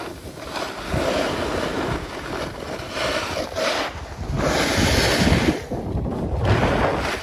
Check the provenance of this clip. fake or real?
real